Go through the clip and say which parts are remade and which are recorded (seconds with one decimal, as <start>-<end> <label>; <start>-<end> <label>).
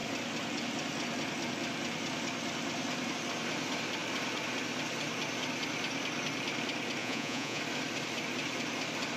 0.0-7.0 recorded; 7.0-7.6 remade; 7.6-9.2 recorded